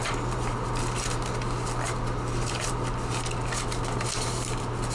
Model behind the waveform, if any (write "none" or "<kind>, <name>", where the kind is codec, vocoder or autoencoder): none